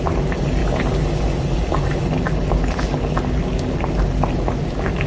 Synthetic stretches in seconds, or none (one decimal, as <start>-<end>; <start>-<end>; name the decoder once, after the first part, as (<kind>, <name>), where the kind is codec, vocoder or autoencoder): none